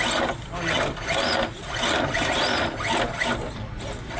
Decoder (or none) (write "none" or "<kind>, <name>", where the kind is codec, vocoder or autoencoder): none